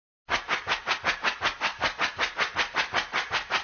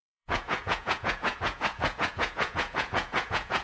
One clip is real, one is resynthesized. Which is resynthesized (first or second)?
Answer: second